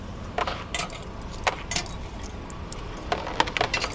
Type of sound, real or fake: real